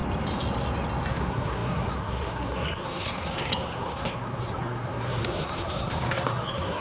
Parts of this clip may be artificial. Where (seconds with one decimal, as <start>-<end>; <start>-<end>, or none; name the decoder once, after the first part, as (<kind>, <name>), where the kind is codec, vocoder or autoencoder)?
1.1-6.8 (codec, SNAC)